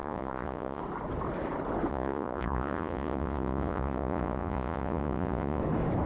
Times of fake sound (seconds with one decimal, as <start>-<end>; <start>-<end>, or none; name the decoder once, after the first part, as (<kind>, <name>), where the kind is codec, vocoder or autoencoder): 0.0-0.8 (vocoder, Vocos); 1.9-5.6

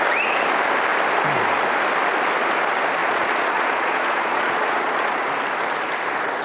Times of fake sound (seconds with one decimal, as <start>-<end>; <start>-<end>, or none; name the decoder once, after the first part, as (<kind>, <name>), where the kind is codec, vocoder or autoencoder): 3.0-5.3 (vocoder, Vocos)